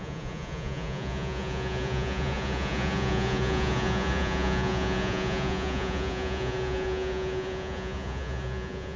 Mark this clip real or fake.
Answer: fake